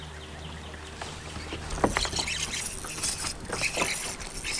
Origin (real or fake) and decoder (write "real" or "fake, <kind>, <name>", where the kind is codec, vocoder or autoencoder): real